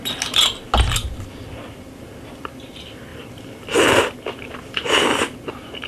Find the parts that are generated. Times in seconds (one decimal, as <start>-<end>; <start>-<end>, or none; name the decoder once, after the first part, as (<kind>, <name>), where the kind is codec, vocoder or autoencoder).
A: 3.1-4.0 (vocoder, BigVGAN v2)